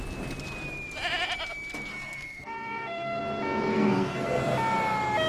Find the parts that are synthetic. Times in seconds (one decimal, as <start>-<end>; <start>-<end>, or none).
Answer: 1.9-3.2; 3.7-4.4